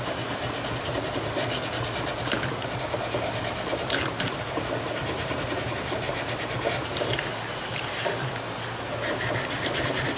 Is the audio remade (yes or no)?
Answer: no